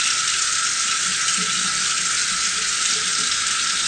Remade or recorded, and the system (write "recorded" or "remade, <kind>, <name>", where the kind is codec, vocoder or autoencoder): recorded